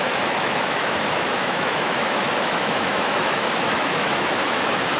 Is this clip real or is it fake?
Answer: fake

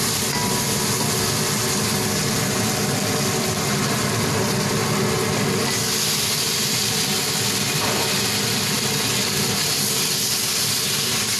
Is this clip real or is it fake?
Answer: real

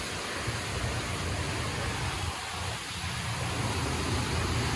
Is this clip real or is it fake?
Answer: real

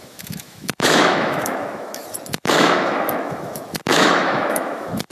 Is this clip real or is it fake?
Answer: fake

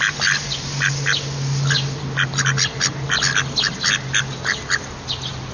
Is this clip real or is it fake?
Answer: real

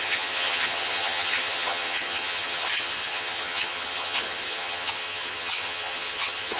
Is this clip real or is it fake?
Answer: fake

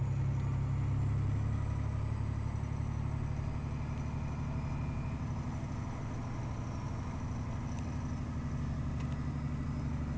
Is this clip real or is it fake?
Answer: real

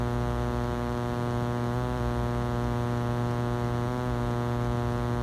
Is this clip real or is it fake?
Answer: real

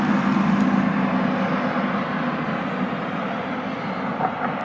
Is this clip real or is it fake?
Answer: real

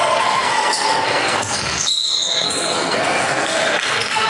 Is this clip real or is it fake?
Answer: fake